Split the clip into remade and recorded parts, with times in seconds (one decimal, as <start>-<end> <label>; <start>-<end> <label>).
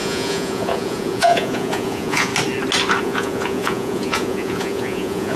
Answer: 0.0-2.3 remade; 2.3-3.0 recorded; 3.0-5.4 remade